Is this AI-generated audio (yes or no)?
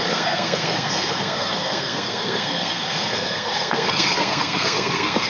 yes